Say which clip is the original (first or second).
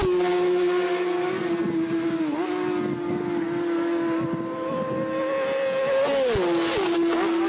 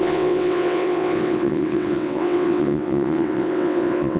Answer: first